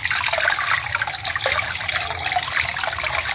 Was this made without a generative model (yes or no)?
yes